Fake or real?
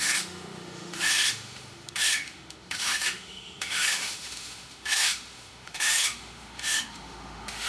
fake